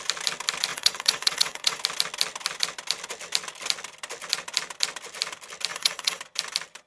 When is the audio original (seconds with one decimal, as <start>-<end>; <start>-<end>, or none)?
0.0-0.7; 1.8-5.7; 6.2-6.9